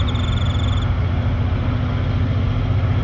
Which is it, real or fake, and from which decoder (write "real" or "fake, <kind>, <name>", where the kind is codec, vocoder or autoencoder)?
real